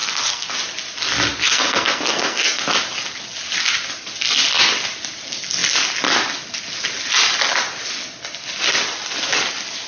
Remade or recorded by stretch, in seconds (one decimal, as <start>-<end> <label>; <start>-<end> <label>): 0.0-0.5 remade; 0.5-1.4 recorded; 1.4-2.6 remade; 2.6-9.9 recorded